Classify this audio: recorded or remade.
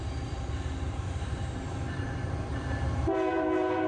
remade